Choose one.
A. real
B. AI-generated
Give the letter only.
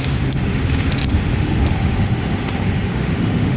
B